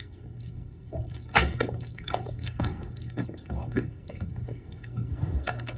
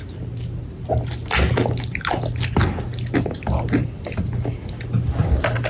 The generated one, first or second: first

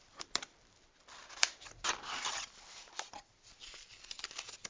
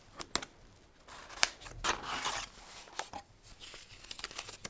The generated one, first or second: first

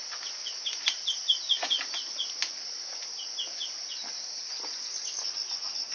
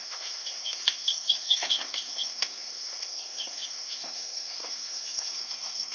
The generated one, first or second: second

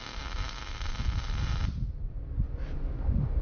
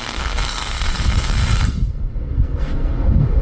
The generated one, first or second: second